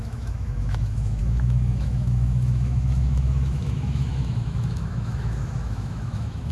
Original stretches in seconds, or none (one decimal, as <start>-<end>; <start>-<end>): none